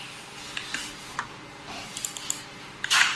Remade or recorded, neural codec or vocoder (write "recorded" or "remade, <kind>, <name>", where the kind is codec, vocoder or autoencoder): recorded